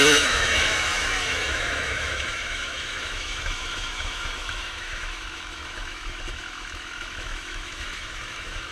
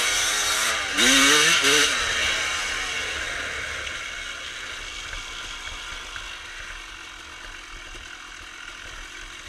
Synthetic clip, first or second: first